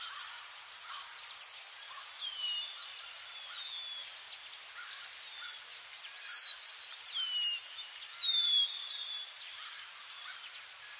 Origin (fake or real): real